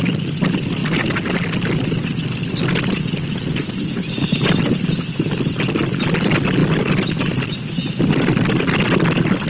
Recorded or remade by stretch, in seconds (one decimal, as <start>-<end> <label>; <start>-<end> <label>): 0.0-9.5 recorded